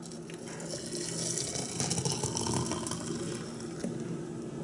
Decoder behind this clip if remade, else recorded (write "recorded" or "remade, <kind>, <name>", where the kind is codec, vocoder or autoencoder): recorded